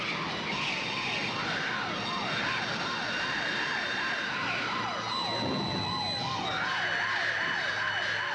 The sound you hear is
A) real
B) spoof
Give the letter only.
A